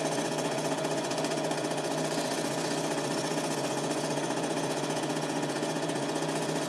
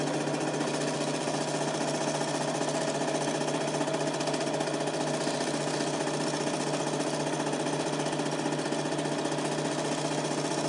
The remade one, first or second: first